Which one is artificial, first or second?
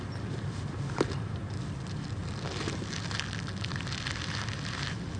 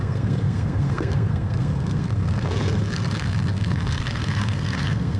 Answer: second